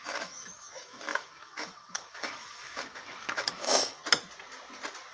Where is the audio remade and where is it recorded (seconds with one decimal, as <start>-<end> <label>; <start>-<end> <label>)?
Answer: 0.0-4.0 remade; 4.0-5.1 recorded